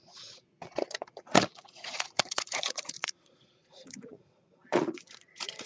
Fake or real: fake